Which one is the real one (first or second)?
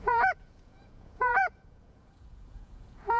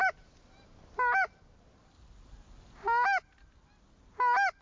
second